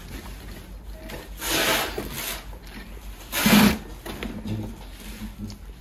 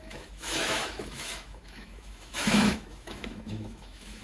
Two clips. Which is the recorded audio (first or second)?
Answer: first